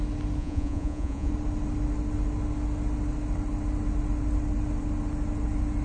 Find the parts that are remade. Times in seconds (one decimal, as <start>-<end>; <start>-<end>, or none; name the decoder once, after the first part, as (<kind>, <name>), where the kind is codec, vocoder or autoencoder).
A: 0.4-1.3 (vocoder, Vocos)